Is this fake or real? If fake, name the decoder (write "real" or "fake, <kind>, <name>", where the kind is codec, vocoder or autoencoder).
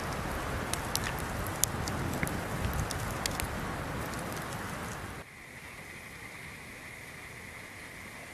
real